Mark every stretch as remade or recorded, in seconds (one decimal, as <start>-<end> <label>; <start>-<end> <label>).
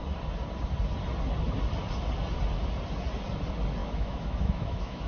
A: 0.0-3.8 recorded; 3.8-5.1 remade